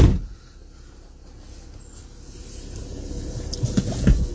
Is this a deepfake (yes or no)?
no